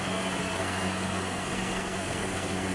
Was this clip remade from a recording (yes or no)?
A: yes